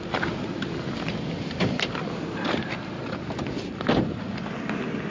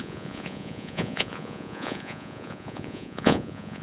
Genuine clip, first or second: first